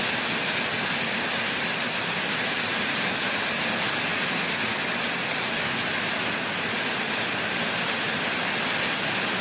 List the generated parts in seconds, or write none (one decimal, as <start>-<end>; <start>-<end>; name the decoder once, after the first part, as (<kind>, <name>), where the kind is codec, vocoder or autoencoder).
none